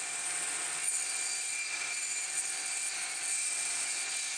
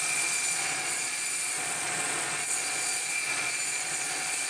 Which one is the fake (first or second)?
second